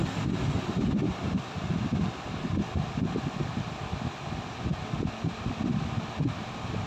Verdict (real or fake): real